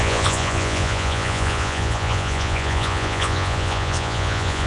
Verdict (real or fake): fake